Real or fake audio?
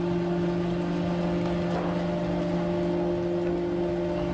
real